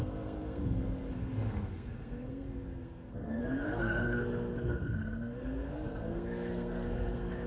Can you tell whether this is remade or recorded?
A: remade